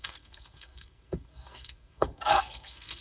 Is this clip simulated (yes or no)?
yes